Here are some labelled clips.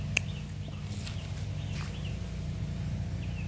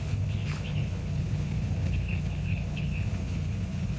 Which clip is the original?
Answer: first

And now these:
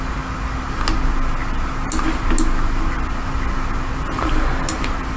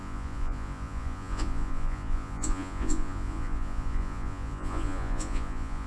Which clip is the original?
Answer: first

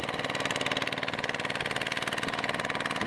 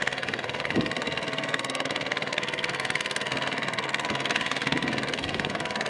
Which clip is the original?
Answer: first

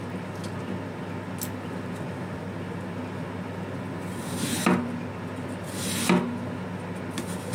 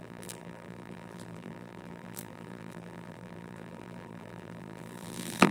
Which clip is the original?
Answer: first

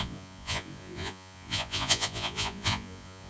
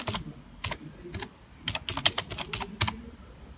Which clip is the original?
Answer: second